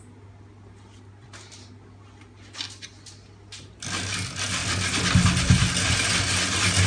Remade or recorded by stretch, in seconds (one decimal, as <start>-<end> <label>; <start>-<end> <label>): 0.0-6.9 recorded